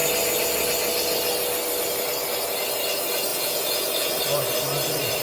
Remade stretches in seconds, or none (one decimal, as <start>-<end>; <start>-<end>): 3.3-4.2